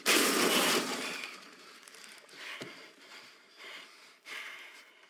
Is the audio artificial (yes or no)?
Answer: yes